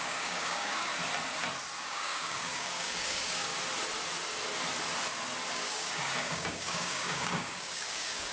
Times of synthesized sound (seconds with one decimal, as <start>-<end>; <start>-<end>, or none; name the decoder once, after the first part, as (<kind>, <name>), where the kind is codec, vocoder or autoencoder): 0.0-0.9 (codec, DAC); 1.8-3.5; 5.5-8.3